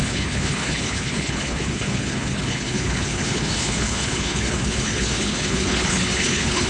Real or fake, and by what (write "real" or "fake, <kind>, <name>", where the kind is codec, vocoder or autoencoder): fake, codec, HILCodec